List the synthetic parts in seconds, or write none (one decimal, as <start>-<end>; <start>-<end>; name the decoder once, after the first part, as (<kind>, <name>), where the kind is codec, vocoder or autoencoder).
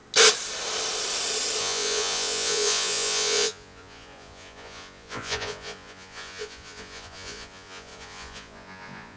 1.6-9.2 (vocoder, Vocos)